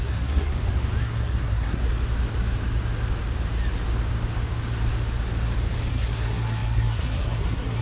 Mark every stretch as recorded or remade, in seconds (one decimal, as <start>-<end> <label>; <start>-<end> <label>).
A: 0.0-0.5 remade; 0.5-1.0 recorded; 1.0-1.8 remade; 1.8-5.9 recorded; 5.9-7.8 remade